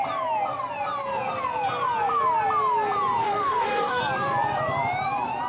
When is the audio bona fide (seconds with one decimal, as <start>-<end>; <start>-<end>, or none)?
0.0-3.2; 4.0-5.5